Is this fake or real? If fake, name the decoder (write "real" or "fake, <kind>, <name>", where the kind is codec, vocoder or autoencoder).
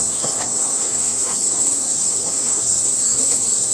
fake, codec, SNAC